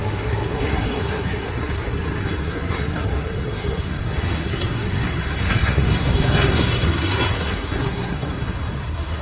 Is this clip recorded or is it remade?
remade